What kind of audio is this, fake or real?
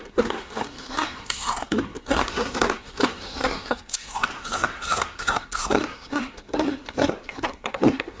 fake